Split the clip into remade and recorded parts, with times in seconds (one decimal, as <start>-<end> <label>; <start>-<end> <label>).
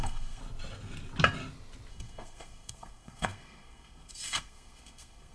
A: 0.0-0.4 remade; 0.4-1.9 recorded; 1.9-5.3 remade